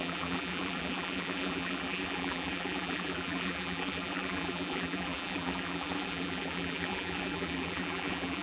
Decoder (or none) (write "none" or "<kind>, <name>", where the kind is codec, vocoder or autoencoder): vocoder, BigVGAN v2